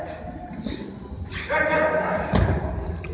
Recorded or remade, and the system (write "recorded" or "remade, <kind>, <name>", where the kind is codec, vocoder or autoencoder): recorded